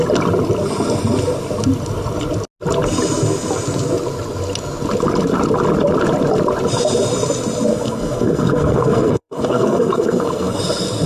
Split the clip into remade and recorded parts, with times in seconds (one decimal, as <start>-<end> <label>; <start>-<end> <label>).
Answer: 0.0-7.7 recorded; 7.7-10.6 remade; 10.6-11.1 recorded